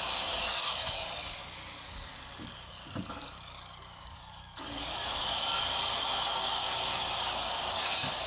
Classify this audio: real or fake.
fake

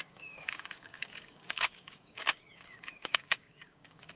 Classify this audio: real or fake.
fake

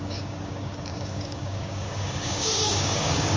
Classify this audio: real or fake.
fake